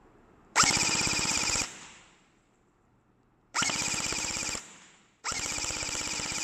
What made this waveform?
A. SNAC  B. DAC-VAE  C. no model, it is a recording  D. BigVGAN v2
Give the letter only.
D